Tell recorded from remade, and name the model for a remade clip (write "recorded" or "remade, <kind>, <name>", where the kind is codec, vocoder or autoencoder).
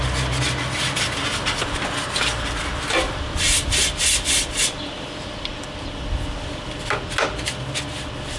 recorded